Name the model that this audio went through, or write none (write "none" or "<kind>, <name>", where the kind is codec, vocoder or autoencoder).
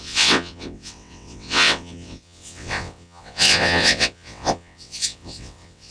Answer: vocoder, WaveNeXt